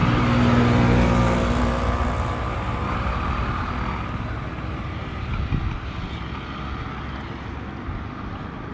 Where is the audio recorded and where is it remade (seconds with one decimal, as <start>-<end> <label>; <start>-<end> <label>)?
0.0-8.7 recorded